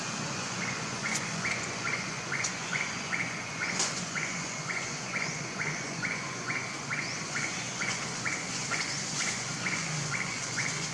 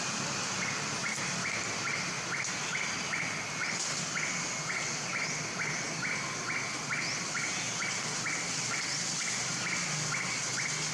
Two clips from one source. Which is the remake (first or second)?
first